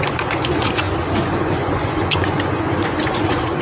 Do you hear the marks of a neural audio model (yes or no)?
yes